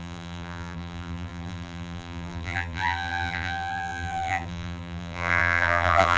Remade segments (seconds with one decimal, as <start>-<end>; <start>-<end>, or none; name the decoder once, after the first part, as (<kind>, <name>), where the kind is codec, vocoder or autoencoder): 0.0-6.2 (vocoder, BigVGAN v2)